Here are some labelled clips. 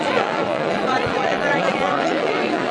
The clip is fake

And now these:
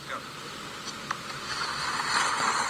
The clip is real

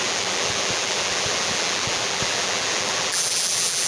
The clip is fake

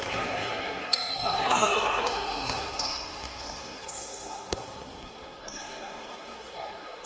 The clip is fake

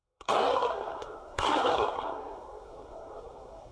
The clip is fake